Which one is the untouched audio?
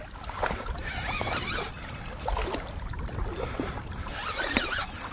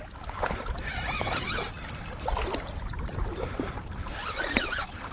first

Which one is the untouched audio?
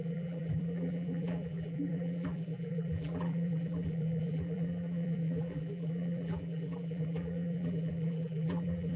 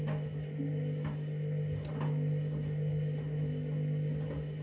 second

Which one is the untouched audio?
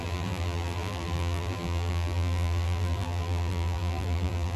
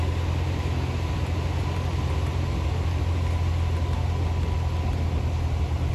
second